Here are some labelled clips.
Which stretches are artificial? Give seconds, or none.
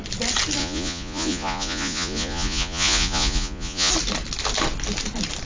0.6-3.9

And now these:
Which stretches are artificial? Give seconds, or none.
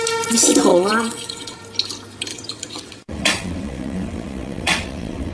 0.7-1.6; 2.3-5.3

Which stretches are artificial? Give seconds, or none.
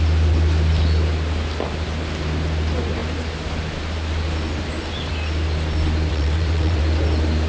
6.1-6.8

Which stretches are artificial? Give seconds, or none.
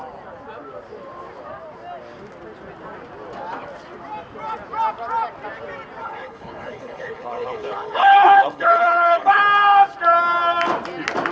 6.0-9.4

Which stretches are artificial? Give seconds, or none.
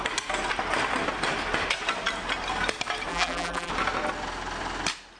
3.1-3.7